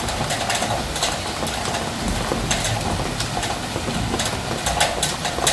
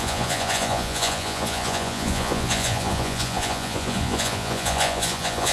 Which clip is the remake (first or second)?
second